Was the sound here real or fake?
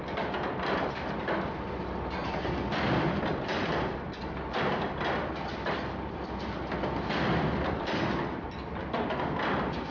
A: real